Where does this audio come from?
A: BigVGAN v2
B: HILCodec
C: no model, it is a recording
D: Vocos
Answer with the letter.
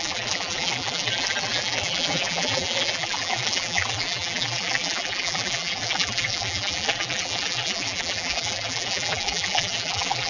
A